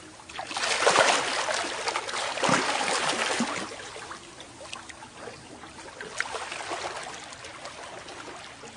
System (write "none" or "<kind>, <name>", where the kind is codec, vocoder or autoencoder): none